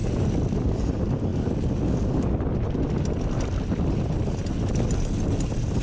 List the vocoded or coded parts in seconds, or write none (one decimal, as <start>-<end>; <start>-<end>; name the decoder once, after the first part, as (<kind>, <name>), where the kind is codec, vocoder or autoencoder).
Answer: none

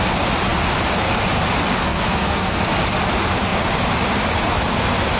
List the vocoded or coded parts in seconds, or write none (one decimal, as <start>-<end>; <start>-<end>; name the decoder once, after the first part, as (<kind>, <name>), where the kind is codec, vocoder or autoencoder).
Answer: 1.8-2.6 (codec, SNAC)

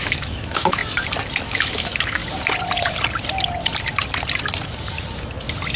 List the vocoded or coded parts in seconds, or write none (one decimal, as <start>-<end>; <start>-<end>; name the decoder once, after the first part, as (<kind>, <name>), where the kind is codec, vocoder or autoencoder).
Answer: 0.0-0.8 (autoencoder, DAC-VAE); 1.4-2.2

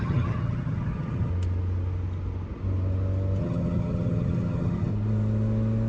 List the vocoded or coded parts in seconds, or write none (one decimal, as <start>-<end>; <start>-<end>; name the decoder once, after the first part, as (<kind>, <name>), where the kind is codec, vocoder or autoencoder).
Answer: 0.0-1.3 (vocoder, HiFi-GAN); 3.4-4.9

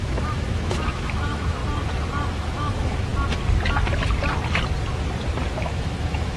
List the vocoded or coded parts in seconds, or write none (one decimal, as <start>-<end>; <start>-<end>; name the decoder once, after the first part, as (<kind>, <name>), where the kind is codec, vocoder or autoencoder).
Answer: 0.0-1.6 (autoencoder, DAC-VAE); 2.3-3.1; 5.6-6.4

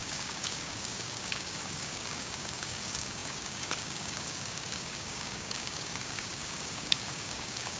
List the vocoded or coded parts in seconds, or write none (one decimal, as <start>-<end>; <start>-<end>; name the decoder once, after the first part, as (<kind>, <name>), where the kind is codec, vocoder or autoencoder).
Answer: 0.0-7.8 (codec, DAC)

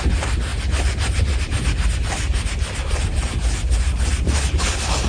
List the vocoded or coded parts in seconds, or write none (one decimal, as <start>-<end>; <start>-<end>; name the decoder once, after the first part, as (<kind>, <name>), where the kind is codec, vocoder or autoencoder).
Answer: none